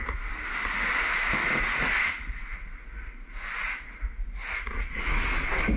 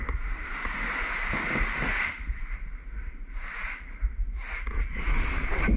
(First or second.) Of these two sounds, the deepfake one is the second